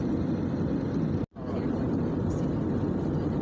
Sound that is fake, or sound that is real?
real